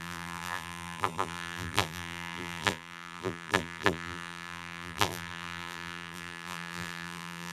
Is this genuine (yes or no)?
no